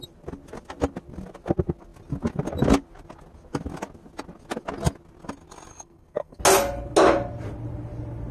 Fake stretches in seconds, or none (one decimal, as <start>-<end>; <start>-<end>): 5.7-6.4